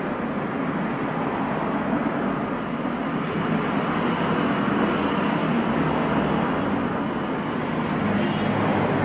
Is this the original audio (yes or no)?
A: yes